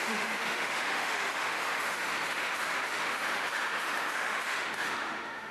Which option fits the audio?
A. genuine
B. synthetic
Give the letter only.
B